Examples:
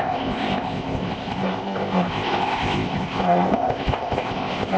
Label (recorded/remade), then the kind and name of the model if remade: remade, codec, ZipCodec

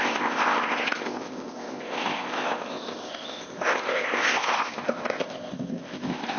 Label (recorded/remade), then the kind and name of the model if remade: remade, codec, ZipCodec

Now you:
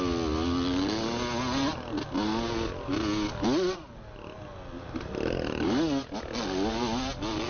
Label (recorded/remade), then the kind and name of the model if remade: recorded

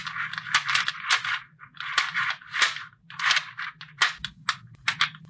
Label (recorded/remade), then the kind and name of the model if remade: recorded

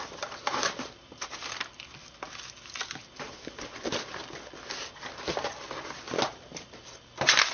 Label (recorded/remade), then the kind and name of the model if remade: recorded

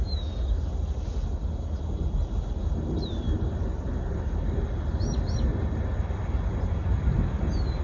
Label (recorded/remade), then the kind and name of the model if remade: recorded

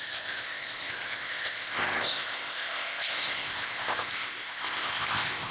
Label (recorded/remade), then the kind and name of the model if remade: remade, codec, ZipCodec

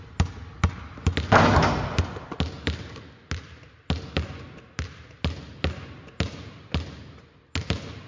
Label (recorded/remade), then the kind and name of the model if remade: recorded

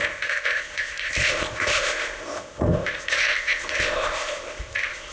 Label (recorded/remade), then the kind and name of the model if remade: remade, codec, ZipCodec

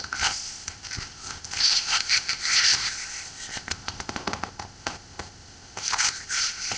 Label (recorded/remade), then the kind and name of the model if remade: remade, codec, ZipCodec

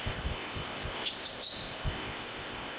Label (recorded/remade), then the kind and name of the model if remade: remade, codec, ZipCodec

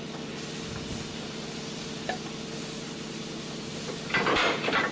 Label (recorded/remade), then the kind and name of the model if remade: recorded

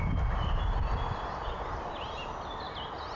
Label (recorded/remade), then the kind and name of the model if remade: recorded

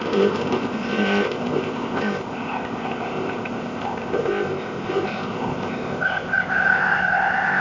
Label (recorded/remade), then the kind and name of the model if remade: remade, codec, ZipCodec